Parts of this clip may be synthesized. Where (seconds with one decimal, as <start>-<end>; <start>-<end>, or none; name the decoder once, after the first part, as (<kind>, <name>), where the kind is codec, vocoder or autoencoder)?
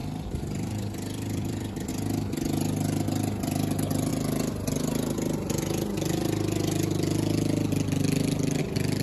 0.0-1.9 (vocoder, BigVGAN v2)